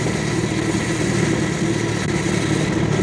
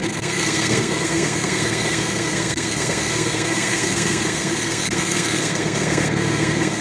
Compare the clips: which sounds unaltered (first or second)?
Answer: first